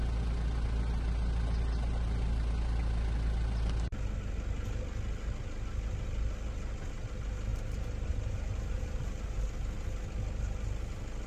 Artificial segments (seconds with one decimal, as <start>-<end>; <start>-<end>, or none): 7.5-9.4

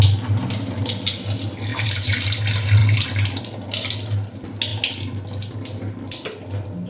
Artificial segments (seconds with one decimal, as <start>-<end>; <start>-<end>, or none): 1.7-2.3; 2.8-3.4